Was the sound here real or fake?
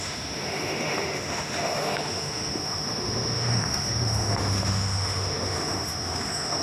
fake